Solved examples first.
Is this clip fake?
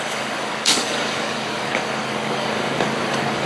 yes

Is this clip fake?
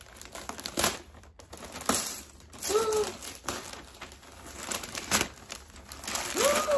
no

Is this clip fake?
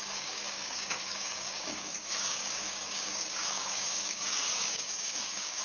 yes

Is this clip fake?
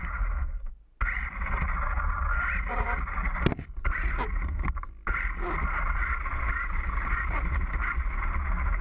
no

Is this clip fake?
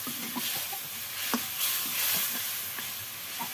no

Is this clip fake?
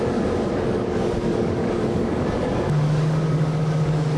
yes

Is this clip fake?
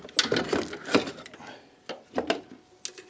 no